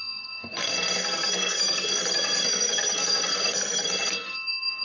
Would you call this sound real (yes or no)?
no